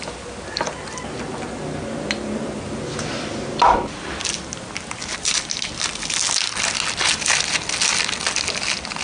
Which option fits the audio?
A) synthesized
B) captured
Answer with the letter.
B